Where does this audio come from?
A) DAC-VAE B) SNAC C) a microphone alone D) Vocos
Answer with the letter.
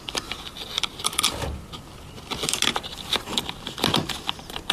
C